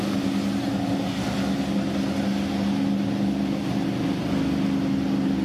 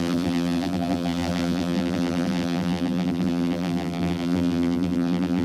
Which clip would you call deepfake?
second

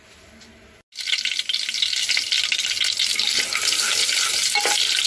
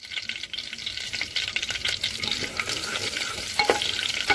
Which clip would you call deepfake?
second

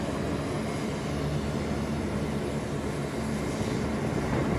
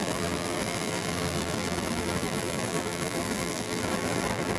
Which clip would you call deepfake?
second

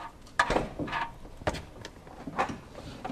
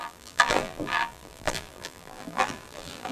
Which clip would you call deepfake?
second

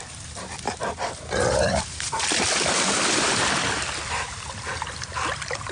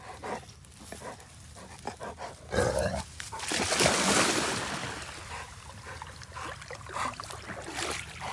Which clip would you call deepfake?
first